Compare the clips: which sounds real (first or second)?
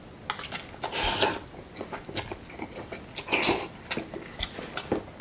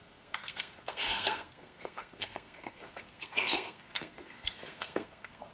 first